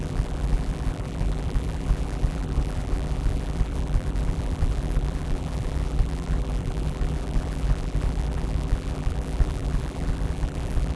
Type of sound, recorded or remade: remade